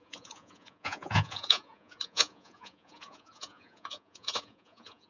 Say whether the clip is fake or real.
fake